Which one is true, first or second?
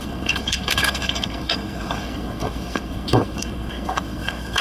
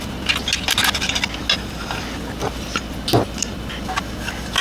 second